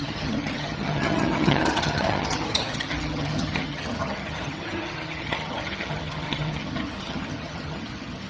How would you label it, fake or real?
fake